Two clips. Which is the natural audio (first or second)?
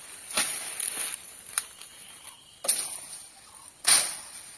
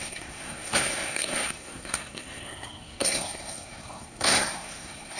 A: first